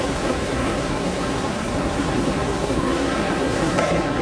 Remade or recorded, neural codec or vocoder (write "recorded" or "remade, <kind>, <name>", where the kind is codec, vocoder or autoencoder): remade, codec, SNAC